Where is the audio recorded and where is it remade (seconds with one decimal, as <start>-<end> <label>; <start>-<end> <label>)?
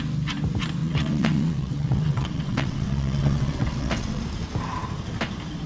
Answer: 0.0-0.8 recorded; 0.8-4.2 remade; 4.2-5.7 recorded